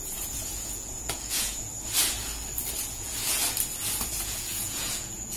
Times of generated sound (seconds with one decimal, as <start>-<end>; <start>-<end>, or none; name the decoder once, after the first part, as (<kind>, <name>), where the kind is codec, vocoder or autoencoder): 0.0-1.7 (vocoder, Vocos); 2.9-3.4; 4.2-5.4